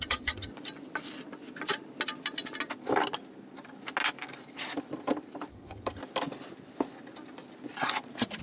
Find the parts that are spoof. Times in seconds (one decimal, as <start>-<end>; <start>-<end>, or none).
0.0-0.5; 5.5-6.0

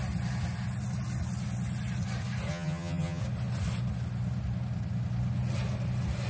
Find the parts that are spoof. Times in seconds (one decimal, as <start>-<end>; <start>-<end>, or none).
2.5-3.2

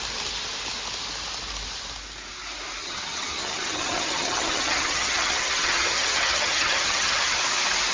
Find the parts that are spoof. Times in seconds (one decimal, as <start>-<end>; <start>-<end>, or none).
2.8-7.4

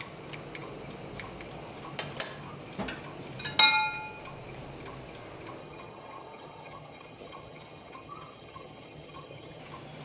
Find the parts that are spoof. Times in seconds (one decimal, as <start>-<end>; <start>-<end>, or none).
5.6-9.6